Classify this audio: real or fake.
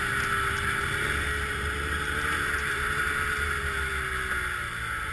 real